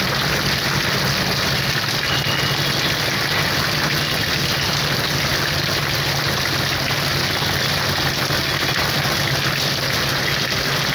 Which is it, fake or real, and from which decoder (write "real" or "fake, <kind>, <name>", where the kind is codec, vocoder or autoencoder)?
real